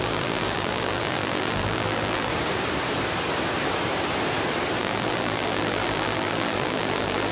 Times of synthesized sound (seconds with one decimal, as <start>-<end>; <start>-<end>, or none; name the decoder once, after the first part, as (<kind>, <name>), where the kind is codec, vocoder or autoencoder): 0.0-2.3 (vocoder, BigVGAN v2); 4.8-7.3